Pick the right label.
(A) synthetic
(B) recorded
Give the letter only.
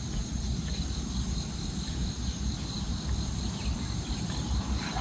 B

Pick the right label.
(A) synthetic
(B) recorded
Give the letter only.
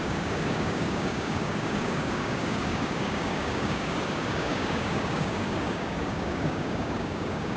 A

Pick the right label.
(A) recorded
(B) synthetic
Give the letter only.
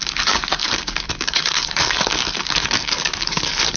B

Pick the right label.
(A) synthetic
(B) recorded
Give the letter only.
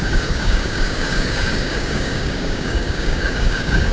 A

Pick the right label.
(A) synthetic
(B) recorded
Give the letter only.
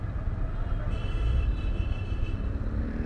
B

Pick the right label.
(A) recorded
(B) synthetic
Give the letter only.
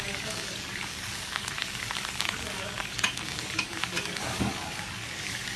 B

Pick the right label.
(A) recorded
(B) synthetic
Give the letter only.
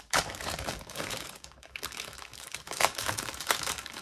B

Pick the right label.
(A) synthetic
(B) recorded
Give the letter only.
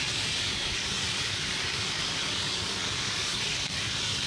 A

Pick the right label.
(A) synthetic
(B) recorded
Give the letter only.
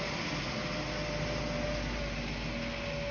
B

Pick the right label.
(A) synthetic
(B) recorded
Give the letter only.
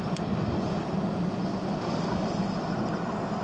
B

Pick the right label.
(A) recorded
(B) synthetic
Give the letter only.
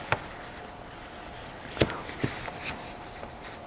A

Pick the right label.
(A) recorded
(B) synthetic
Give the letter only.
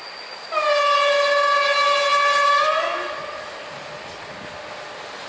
A